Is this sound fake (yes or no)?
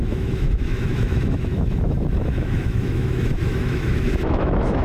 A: yes